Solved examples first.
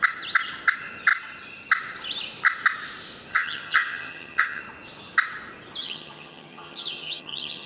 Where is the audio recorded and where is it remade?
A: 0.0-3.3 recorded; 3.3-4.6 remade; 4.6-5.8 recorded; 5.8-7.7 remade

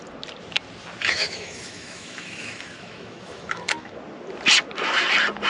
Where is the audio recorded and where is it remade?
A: 0.0-1.0 recorded; 1.0-3.9 remade; 3.9-5.5 recorded